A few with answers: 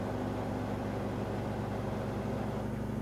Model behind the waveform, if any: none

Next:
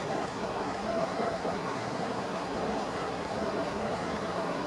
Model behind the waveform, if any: codec, SNAC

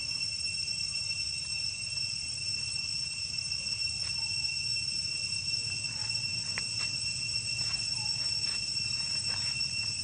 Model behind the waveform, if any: none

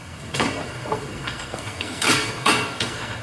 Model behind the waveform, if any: codec, SNAC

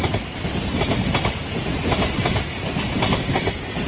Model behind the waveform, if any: none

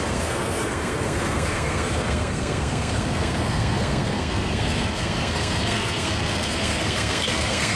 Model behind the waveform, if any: codec, SNAC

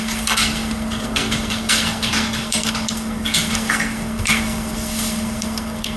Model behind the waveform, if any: codec, SNAC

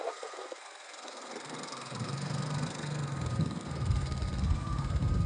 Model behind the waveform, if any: codec, SNAC